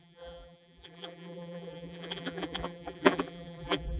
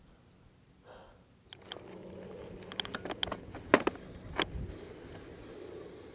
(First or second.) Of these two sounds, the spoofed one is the first